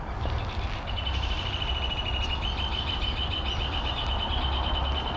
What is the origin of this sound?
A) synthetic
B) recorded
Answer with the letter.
B